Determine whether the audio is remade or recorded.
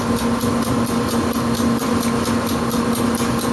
recorded